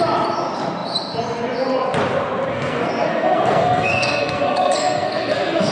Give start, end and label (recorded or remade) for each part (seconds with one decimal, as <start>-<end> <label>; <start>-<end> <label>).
0.0-2.5 recorded; 2.5-5.7 remade